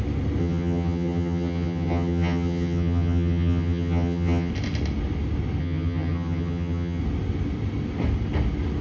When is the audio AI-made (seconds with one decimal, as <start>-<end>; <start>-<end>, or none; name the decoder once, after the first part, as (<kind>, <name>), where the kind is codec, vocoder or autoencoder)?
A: 0.4-4.5 (vocoder, HiFi-GAN); 5.6-7.0